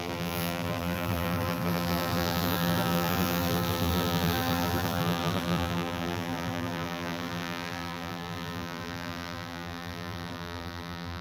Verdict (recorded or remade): remade